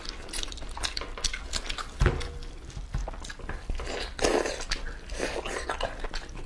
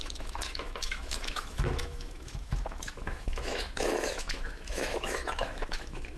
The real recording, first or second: first